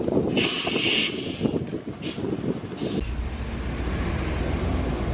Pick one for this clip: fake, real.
real